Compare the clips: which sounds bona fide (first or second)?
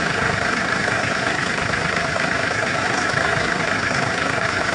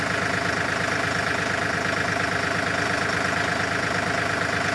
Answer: second